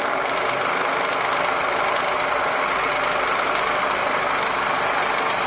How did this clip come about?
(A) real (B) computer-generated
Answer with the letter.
A